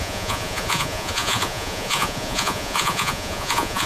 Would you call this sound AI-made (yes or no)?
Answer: yes